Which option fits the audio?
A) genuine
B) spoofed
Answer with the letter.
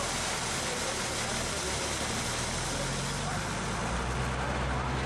A